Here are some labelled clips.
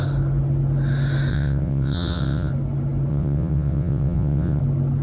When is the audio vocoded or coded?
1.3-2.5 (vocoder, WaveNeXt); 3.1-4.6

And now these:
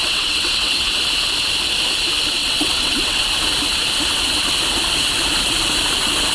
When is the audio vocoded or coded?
0.0-1.0 (vocoder, WaveNeXt); 2.4-3.2